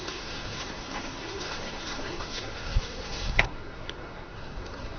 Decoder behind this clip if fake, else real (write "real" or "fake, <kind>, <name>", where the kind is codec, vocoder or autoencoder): fake, codec, SNAC